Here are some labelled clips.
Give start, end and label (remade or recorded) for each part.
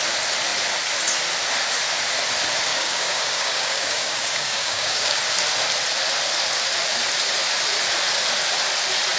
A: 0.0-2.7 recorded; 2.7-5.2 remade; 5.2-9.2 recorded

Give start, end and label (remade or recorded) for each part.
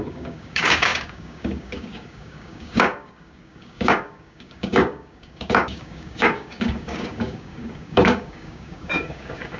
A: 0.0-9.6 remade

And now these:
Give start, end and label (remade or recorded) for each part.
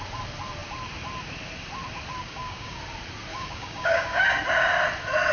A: 0.0-2.2 recorded; 2.2-2.8 remade; 2.8-3.3 recorded; 3.3-4.2 remade; 4.2-5.3 recorded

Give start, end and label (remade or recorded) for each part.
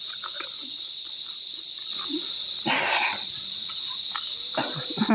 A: 0.0-5.1 recorded